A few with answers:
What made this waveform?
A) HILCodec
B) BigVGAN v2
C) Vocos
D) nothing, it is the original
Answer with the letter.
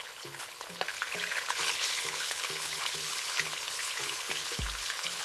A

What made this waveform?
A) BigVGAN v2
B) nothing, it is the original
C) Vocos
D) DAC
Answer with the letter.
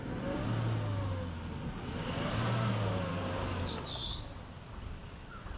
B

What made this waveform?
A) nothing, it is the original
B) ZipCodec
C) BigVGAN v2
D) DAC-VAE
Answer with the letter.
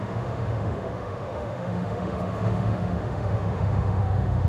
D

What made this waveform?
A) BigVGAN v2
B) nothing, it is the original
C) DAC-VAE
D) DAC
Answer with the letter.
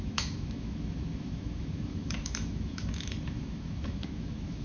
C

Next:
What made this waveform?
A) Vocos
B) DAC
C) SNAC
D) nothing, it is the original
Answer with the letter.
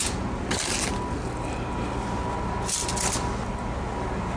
D